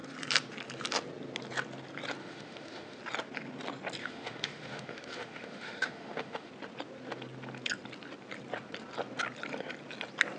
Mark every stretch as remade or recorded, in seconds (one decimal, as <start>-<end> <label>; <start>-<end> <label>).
0.0-2.2 recorded; 2.2-3.0 remade; 3.0-4.0 recorded; 4.0-6.5 remade; 6.5-10.4 recorded